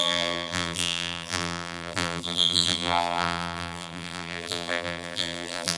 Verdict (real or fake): fake